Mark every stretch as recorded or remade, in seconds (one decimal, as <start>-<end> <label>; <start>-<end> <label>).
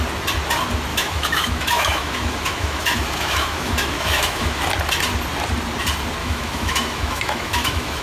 0.0-0.9 recorded; 0.9-4.6 remade; 4.6-6.2 recorded; 6.2-8.0 remade